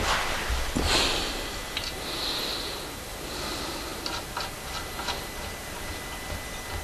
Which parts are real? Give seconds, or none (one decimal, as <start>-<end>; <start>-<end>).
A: 0.0-6.8